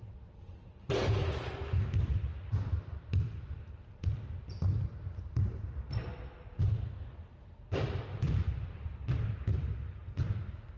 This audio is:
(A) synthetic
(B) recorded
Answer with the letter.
B